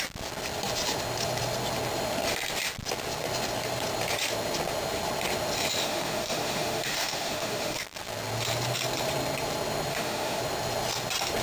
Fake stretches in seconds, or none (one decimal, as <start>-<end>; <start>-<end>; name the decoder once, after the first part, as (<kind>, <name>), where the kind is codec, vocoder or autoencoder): 5.8-7.8 (autoencoder, DAC-VAE); 9.9-10.4